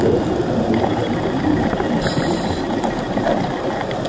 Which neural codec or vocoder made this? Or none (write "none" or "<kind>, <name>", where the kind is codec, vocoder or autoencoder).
none